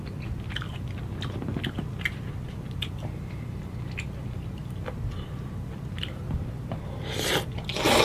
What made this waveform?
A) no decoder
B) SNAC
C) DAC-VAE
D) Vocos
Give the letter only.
A